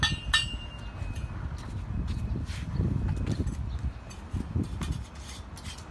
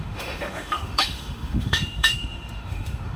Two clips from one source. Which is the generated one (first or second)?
second